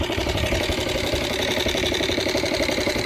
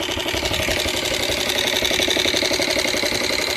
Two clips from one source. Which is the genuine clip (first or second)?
second